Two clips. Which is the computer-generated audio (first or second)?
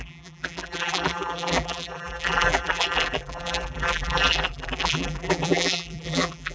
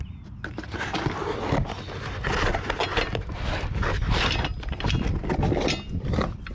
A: first